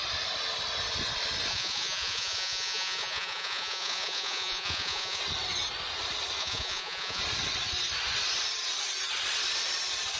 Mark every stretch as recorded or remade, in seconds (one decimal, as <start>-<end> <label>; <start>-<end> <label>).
0.0-1.5 recorded; 1.5-5.2 remade; 5.2-6.4 recorded; 6.4-7.2 remade; 7.2-10.2 recorded